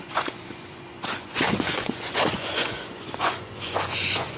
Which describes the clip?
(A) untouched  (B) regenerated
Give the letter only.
B